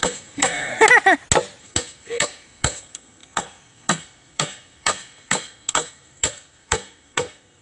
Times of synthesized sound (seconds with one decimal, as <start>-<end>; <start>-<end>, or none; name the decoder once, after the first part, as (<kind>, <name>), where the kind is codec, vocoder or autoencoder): 0.0-0.7 (codec, SNAC); 1.6-7.6